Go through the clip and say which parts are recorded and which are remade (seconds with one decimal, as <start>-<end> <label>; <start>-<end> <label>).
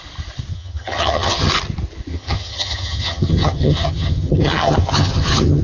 0.0-0.5 recorded; 0.5-1.5 remade; 1.5-2.1 recorded; 2.1-5.6 remade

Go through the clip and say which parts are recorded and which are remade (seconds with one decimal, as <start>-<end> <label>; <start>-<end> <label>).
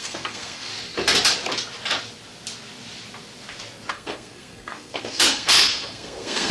0.0-0.7 remade; 0.7-3.9 recorded; 3.9-6.5 remade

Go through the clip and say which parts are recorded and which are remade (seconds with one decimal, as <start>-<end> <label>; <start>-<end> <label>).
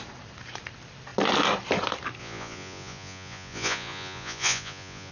0.0-2.2 recorded; 2.2-5.1 remade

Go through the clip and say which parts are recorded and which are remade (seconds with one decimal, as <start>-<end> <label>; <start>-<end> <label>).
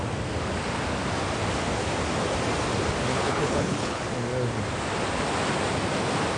0.0-3.1 recorded; 3.1-4.0 remade; 4.0-6.4 recorded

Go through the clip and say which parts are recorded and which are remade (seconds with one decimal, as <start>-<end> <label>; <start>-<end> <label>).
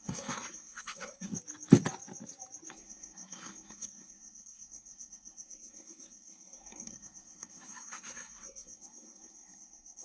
0.0-1.3 remade; 1.3-2.7 recorded; 2.7-10.0 remade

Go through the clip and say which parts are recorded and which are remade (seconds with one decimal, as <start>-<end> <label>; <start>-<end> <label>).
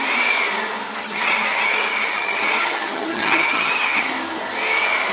0.0-1.0 recorded; 1.0-4.1 remade; 4.1-5.1 recorded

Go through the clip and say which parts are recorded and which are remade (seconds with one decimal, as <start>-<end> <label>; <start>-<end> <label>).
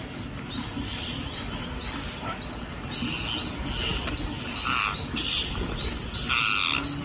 0.0-7.0 recorded